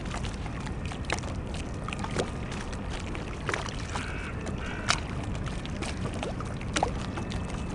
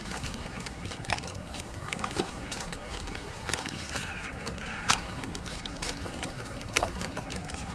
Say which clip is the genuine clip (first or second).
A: first